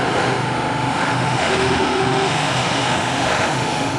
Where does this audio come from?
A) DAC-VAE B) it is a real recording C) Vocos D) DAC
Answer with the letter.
A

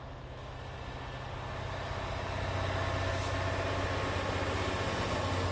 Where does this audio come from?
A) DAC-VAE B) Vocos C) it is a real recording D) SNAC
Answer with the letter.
C